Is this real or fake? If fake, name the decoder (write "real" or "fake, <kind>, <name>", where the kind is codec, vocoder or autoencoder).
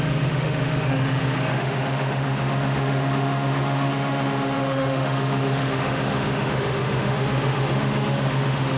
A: fake, autoencoder, DAC-VAE